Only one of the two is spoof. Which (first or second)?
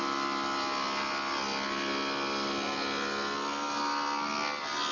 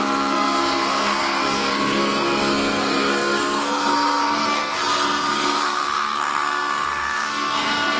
second